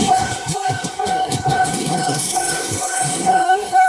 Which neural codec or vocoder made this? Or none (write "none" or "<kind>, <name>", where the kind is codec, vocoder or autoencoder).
codec, SNAC